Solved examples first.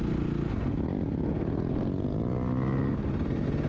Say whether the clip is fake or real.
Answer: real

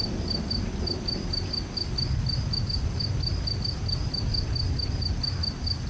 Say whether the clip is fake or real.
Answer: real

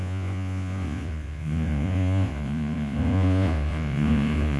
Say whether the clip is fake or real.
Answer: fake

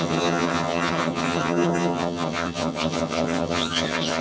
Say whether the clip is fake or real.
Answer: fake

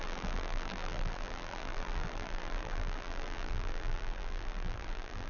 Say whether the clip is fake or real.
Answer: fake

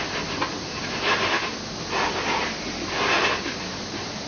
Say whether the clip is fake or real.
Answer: real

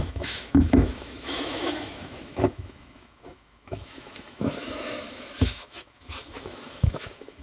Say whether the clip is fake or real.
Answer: fake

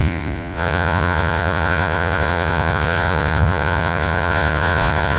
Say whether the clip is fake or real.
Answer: fake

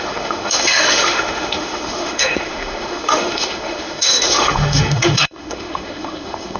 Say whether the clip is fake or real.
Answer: fake